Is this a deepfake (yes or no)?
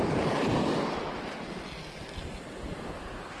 no